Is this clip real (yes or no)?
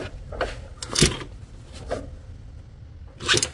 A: yes